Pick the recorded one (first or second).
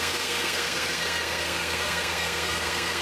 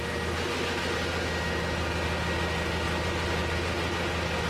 second